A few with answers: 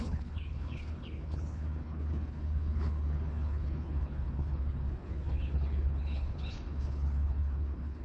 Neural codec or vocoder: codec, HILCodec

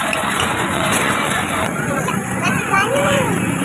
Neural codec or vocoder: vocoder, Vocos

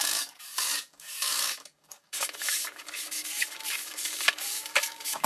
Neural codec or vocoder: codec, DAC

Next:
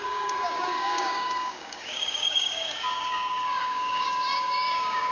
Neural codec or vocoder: codec, DAC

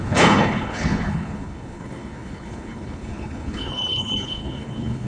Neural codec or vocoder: codec, HILCodec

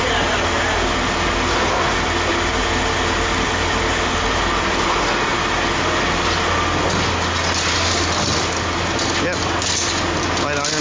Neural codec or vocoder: none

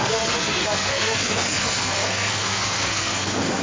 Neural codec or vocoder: codec, SNAC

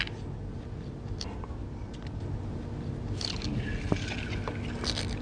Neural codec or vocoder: none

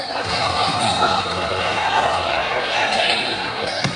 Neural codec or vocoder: codec, SNAC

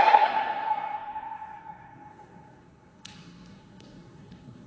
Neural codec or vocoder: codec, SNAC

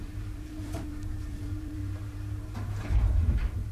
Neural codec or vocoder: vocoder, BigVGAN v2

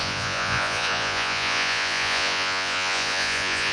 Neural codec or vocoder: vocoder, Vocos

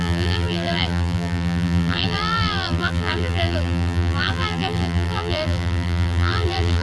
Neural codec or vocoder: vocoder, BigVGAN v2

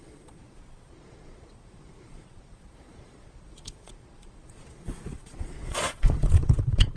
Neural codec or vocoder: vocoder, Vocos